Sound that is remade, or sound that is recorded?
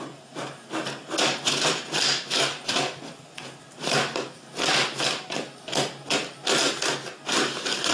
recorded